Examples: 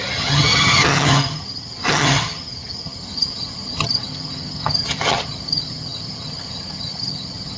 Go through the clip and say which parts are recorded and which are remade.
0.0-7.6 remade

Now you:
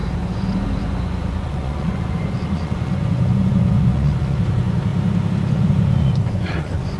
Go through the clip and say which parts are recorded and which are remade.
0.0-4.9 remade; 4.9-5.5 recorded; 5.5-7.0 remade

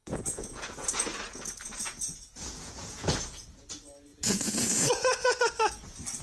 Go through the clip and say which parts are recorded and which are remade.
0.0-3.6 remade; 3.6-4.1 recorded; 4.1-5.4 remade; 5.4-6.2 recorded

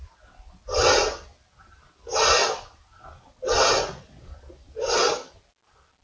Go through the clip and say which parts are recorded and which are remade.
0.0-6.0 recorded

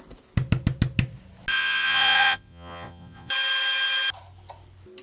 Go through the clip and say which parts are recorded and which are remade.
0.0-1.5 recorded; 1.5-3.3 remade; 3.3-5.0 recorded